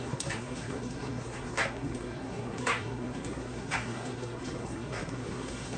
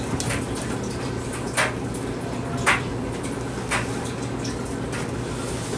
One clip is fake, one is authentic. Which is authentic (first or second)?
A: second